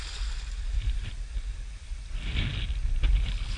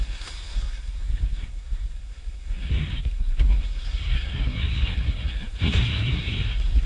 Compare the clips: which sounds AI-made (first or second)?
second